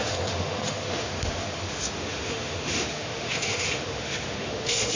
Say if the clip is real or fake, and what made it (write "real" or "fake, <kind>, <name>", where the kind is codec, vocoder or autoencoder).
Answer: fake, autoencoder, DAC-VAE